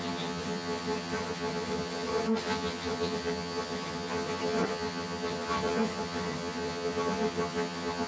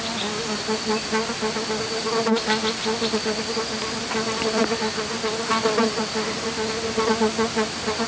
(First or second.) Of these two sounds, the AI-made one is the first